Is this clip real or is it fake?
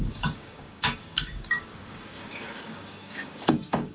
fake